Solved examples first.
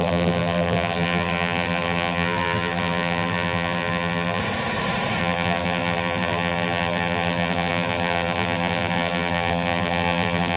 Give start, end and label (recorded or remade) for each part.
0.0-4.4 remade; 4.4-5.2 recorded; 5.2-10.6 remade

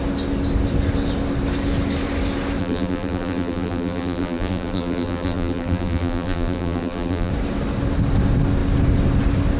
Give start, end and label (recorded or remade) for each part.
0.0-2.6 recorded; 2.6-7.3 remade; 7.3-9.6 recorded

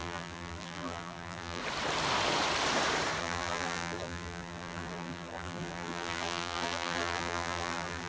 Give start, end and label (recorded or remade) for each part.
0.0-1.6 remade; 1.6-3.2 recorded; 3.2-8.1 remade